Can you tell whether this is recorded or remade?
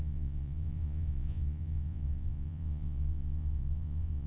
remade